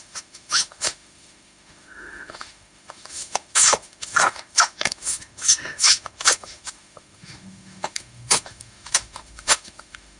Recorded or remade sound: remade